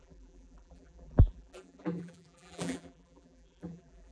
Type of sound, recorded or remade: remade